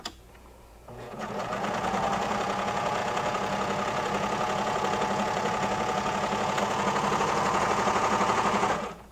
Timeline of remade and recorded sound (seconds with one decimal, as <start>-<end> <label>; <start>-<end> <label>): 0.0-9.1 remade